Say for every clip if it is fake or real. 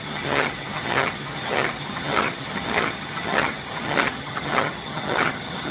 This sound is fake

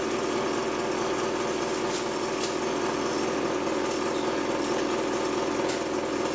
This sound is real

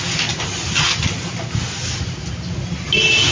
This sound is real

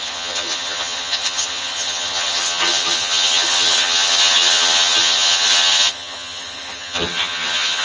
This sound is fake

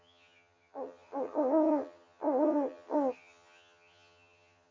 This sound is fake